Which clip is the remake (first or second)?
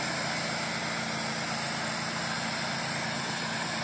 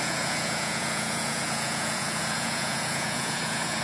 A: second